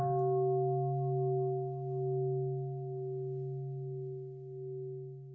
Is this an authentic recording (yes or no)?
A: yes